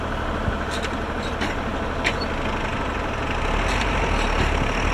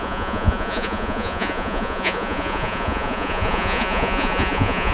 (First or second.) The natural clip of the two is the first